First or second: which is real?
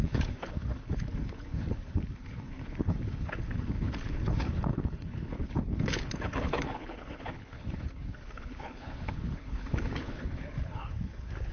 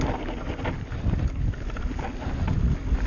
second